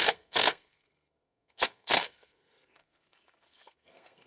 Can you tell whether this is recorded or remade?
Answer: remade